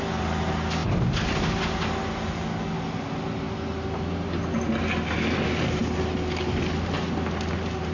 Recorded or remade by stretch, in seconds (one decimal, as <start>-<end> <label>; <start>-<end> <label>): 0.0-7.9 recorded